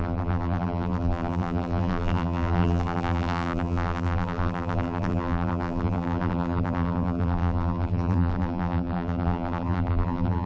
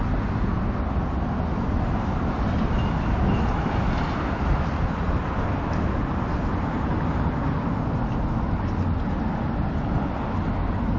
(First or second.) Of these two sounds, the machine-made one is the first